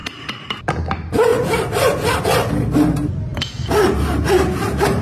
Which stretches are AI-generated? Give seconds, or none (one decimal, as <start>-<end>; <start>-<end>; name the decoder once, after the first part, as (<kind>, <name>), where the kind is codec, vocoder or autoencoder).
0.0-0.6 (vocoder, BigVGAN v2)